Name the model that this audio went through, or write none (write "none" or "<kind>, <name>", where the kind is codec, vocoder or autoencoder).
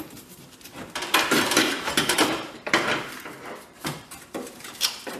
vocoder, BigVGAN v2